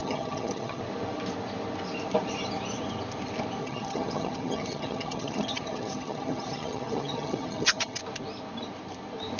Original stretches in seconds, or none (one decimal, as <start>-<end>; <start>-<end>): 0.8-3.6; 8.0-9.4